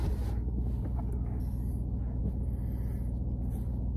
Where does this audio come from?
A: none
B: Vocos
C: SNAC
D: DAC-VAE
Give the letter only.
A